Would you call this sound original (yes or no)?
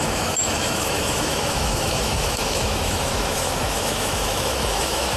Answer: no